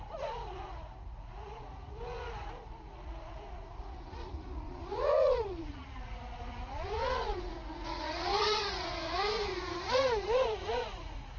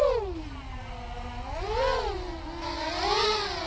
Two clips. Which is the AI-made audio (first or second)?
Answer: first